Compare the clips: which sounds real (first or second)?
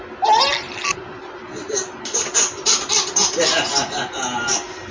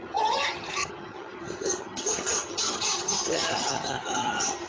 first